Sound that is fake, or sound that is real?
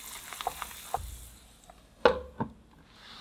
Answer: real